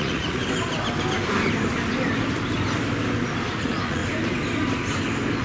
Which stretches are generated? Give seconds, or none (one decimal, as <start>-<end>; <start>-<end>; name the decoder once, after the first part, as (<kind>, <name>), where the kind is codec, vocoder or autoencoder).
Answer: 0.0-0.4 (vocoder, Vocos); 3.6-4.0

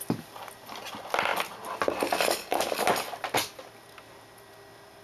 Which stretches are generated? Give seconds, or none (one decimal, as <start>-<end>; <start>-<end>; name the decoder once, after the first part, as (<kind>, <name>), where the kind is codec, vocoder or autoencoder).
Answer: none

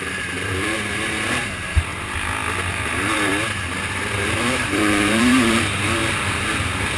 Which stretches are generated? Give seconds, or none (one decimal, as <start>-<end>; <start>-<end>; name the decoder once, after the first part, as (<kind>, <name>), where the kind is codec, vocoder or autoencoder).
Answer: 0.0-1.9 (vocoder, BigVGAN v2); 2.7-3.3; 3.8-6.0; 6.6-7.0

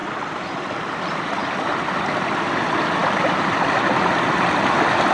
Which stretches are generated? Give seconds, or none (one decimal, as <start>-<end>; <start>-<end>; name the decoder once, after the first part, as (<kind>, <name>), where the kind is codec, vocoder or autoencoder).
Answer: none

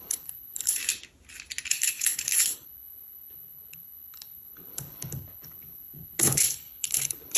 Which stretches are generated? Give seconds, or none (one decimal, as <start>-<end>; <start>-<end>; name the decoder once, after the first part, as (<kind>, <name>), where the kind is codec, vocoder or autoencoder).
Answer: 0.0-0.8 (codec, HILCodec); 1.7-7.4

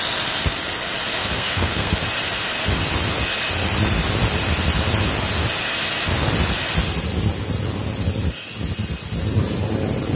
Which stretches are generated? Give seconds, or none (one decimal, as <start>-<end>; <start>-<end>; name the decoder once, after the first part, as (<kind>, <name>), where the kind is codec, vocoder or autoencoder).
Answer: 1.2-1.9 (codec, SNAC)

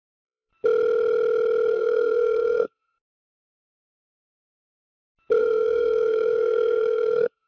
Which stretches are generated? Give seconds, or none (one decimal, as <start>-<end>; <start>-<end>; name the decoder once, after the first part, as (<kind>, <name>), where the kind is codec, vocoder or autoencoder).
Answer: 0.0-0.5 (codec, SNAC); 1.7-3.9; 5.4-7.5

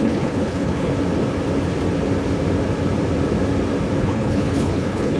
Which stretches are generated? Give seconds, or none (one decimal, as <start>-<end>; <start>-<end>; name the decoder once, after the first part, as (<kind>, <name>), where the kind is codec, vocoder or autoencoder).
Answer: 0.0-0.9 (codec, HILCodec); 4.0-5.2